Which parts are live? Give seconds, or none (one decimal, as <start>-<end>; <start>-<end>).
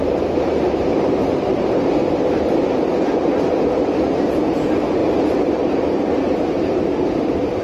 2.0-3.8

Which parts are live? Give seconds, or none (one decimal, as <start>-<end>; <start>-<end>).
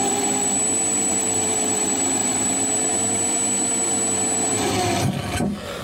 0.0-5.8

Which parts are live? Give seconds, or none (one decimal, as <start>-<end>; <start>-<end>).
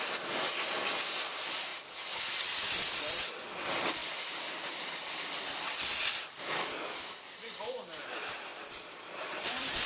0.0-1.7; 3.0-8.5; 9.5-9.9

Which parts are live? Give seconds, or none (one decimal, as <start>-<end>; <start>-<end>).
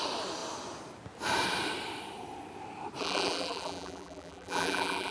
0.0-3.0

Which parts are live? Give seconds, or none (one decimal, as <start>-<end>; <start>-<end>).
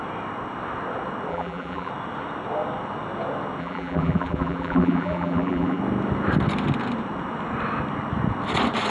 0.0-1.3; 1.9-3.6; 5.8-8.9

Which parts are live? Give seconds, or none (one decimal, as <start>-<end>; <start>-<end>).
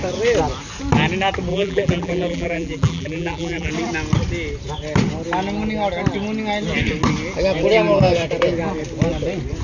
0.0-1.5; 3.7-9.6